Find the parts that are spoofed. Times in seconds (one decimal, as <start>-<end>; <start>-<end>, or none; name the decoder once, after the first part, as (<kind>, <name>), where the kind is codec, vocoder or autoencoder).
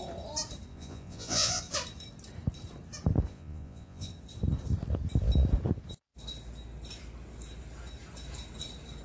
0.7-1.6 (vocoder, Vocos); 3.3-4.1